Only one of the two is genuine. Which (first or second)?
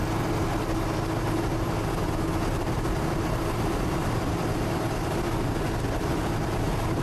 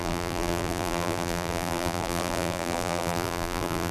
first